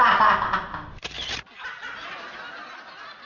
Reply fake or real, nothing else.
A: real